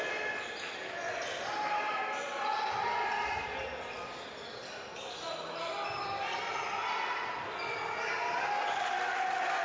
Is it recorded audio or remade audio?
recorded